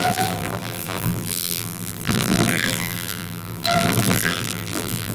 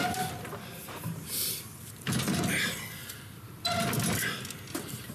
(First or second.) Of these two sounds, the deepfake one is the first